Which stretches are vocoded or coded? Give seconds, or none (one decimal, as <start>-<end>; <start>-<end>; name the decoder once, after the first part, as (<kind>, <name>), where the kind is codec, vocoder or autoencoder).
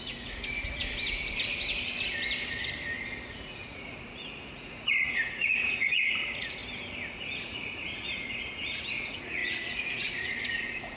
0.0-0.8 (vocoder, Vocos); 3.3-6.6; 7.1-11.0